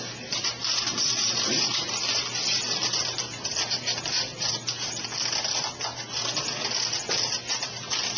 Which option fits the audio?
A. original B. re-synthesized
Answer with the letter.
A